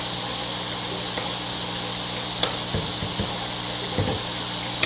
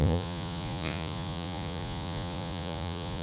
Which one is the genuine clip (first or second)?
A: first